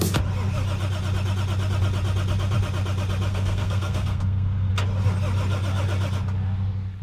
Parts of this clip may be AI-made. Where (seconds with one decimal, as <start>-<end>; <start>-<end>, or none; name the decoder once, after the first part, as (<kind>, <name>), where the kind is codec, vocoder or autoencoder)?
3.3-4.7 (codec, SNAC)